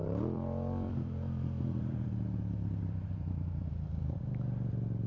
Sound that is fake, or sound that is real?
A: fake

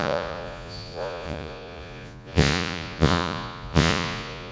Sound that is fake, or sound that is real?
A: fake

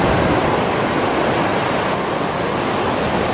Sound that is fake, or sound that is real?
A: real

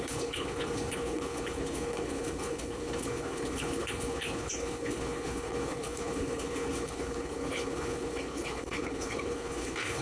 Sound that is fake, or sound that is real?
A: fake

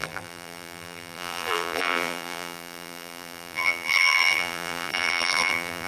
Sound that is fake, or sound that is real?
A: fake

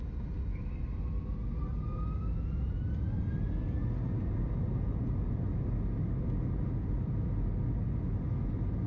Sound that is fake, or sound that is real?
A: real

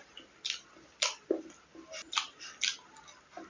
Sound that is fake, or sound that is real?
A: real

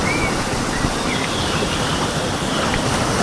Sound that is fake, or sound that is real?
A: real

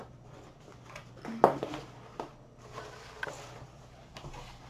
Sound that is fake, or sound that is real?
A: real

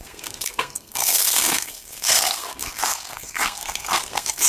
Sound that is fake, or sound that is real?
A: fake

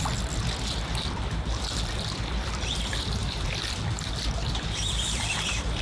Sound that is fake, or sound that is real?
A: real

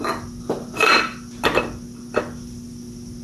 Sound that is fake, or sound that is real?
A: real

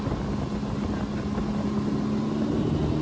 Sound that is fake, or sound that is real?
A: real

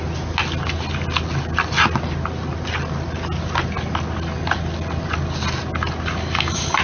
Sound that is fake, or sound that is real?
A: real